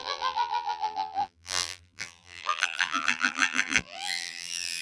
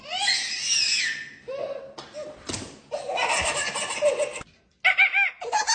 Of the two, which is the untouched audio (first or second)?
second